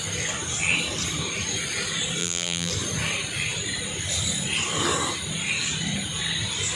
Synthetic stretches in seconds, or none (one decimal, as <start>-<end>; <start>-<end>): 2.2-2.7